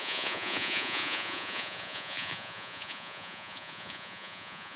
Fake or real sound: fake